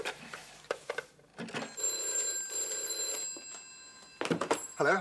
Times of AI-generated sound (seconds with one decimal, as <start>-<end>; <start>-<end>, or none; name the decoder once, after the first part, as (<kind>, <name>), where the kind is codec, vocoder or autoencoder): 0.0-1.3 (vocoder, BigVGAN v2); 4.3-5.0